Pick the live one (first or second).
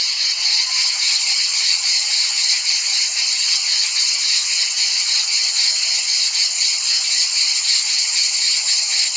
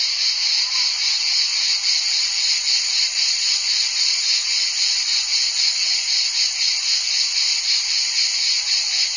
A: second